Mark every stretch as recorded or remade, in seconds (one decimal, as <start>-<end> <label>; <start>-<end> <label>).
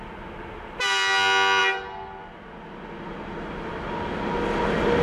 0.0-5.0 recorded